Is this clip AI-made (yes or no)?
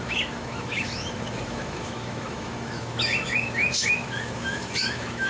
yes